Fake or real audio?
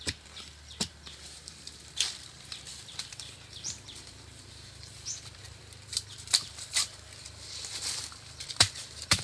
fake